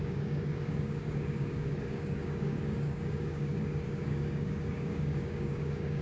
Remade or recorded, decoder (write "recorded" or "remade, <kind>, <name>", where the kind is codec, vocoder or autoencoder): remade, codec, DAC